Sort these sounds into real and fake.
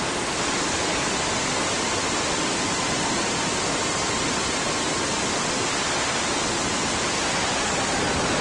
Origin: real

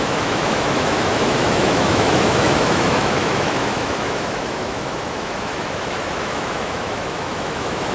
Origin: fake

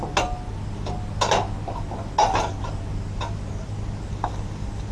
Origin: real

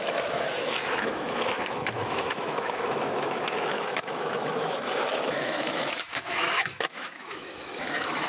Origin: fake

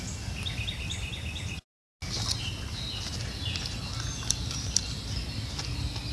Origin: real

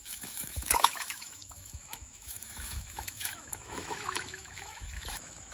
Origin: fake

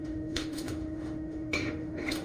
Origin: fake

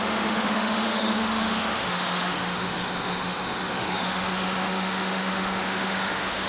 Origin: fake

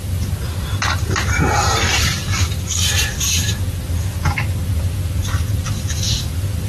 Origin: real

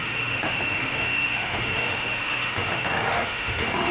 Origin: fake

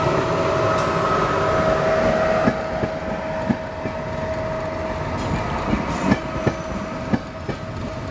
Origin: real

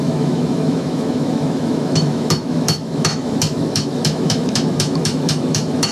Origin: fake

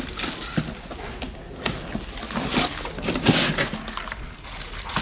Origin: real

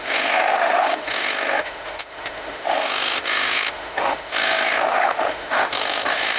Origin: fake